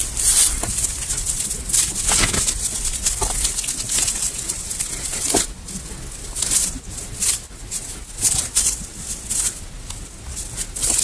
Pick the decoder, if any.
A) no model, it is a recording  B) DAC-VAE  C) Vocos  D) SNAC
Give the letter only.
A